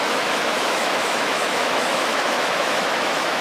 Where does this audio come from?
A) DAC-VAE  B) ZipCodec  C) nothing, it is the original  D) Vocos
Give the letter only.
A